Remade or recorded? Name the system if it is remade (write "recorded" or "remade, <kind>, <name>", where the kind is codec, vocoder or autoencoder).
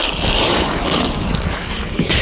remade, codec, DAC